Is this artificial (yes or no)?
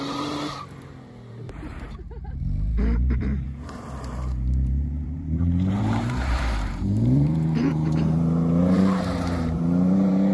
yes